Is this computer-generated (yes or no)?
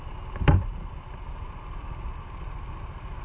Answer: no